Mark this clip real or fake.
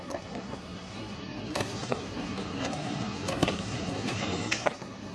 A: fake